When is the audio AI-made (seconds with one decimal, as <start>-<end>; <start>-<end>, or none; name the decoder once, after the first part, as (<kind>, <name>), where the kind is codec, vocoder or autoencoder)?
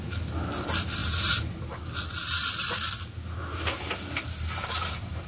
none